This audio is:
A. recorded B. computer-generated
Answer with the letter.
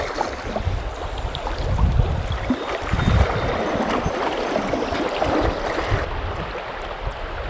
A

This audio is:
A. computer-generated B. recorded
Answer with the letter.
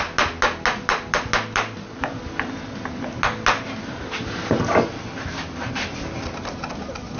B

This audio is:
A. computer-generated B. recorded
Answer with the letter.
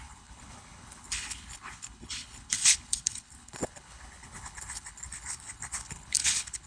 A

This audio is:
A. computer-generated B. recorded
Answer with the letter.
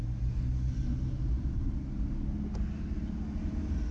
B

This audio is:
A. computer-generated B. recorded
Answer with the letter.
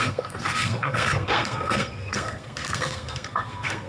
A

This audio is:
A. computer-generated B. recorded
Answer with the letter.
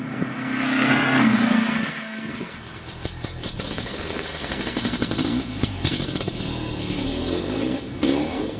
A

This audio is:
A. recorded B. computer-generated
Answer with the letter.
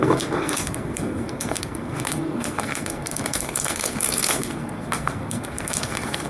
B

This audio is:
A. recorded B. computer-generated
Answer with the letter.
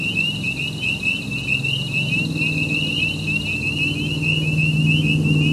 A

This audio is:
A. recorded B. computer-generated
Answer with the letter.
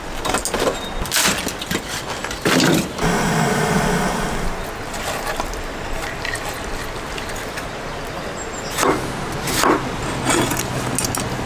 A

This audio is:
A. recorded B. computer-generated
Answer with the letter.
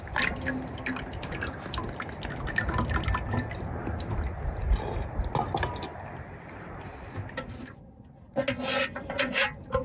A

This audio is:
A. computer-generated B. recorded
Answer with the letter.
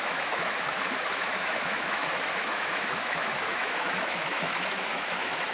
A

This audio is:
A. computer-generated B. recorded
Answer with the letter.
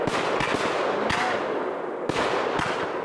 B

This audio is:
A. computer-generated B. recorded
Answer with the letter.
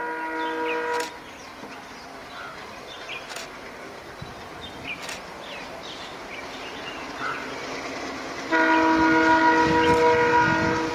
B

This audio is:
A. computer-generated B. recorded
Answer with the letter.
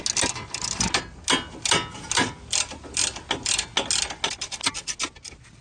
B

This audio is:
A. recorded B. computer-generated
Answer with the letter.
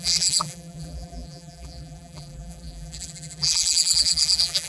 B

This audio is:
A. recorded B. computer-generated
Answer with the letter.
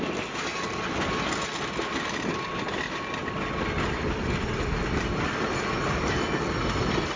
A